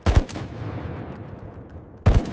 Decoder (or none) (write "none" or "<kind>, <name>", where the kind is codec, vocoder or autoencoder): none